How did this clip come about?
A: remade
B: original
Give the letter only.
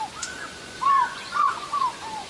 A